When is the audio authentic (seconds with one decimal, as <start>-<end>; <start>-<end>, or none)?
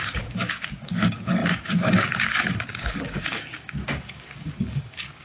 none